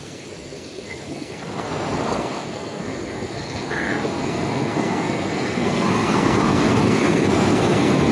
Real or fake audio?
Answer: fake